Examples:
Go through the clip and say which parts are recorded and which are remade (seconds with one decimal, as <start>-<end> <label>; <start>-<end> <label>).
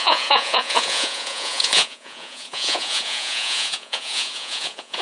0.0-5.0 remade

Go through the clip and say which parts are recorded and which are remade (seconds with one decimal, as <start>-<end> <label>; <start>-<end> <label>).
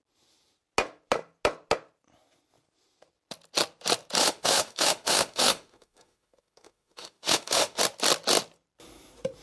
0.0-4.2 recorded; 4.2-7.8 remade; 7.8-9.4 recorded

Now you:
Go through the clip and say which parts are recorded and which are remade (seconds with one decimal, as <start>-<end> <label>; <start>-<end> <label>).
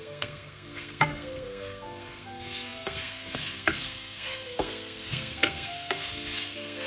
0.0-6.9 remade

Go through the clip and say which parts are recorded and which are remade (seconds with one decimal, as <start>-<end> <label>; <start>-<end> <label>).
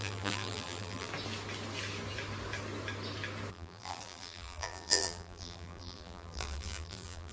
0.0-1.1 remade; 1.1-3.5 recorded; 3.5-7.3 remade